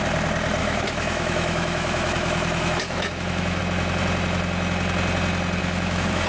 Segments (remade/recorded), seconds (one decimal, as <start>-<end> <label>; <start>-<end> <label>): 0.0-0.6 recorded; 0.6-3.6 remade; 3.6-5.6 recorded; 5.6-6.3 remade